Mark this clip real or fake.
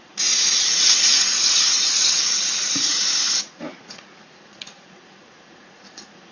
fake